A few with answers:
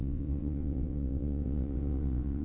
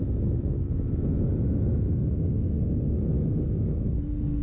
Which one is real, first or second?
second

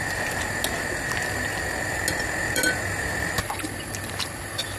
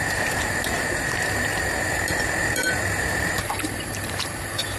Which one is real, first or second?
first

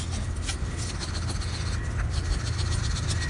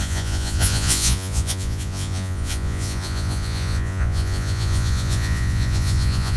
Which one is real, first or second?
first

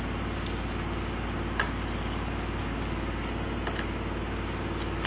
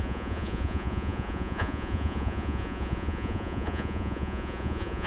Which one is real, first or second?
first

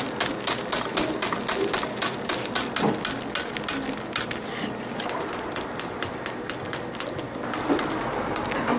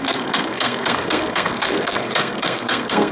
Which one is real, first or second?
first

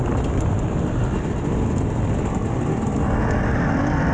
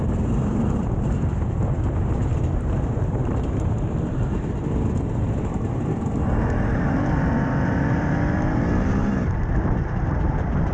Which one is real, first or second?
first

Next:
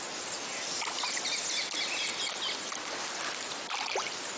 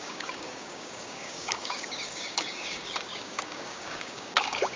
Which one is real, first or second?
first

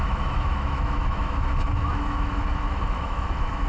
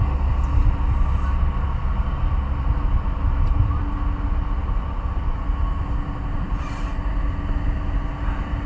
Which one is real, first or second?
second